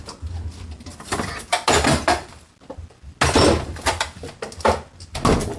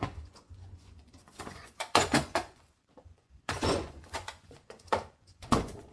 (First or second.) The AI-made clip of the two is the second